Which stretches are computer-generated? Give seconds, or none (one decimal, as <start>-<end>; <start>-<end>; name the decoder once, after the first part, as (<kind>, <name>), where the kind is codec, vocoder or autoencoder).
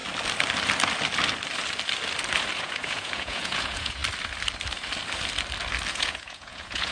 2.5-4.0 (vocoder, Vocos); 5.9-6.9